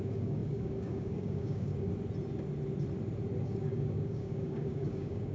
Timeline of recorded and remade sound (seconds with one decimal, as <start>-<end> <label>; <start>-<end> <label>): 0.0-1.9 remade; 1.9-3.4 recorded; 3.4-5.3 remade